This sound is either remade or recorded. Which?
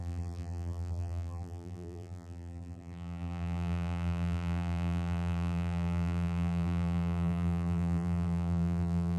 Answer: remade